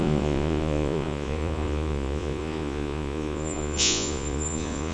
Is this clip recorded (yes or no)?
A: no